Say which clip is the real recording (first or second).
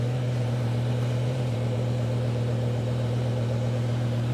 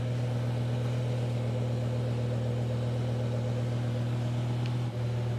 second